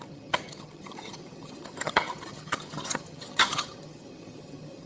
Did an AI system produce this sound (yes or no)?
yes